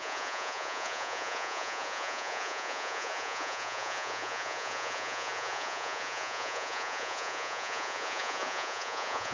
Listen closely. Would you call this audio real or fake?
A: fake